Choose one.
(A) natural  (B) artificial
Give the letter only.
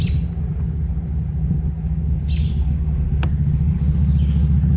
A